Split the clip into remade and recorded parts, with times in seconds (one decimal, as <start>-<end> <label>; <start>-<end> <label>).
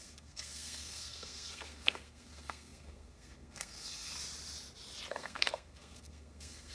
0.0-4.1 remade; 4.1-5.1 recorded; 5.1-6.7 remade